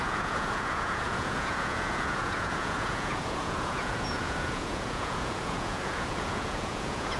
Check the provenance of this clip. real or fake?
fake